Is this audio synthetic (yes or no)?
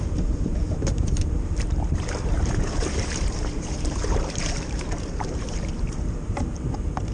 yes